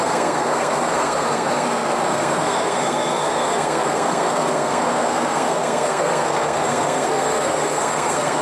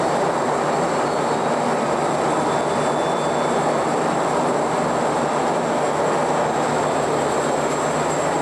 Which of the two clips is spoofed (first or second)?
first